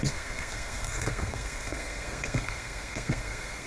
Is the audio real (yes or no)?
no